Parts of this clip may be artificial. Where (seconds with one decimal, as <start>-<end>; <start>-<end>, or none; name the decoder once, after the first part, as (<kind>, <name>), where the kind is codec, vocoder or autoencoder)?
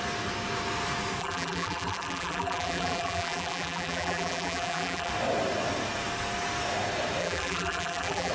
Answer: 1.2-5.1 (vocoder, BigVGAN v2); 7.2-8.3